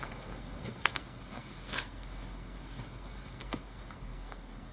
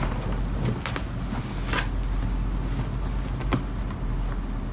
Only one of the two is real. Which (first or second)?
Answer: second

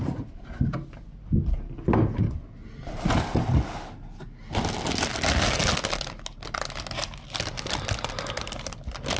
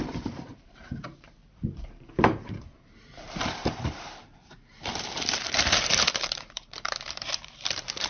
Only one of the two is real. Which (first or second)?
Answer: first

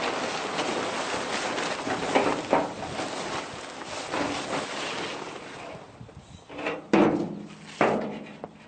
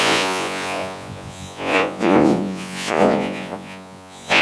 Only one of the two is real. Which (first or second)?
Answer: first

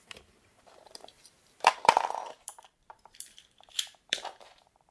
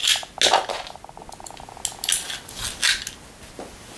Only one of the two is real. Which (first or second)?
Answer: second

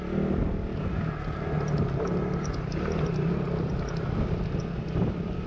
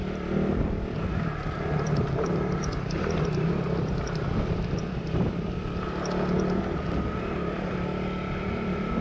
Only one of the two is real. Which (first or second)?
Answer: first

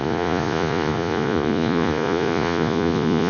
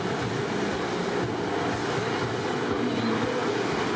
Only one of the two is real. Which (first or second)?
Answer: second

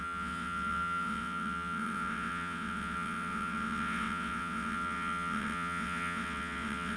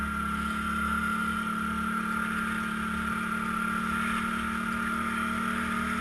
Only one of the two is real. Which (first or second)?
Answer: second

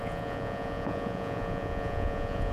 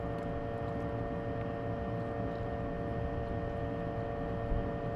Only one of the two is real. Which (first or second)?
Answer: second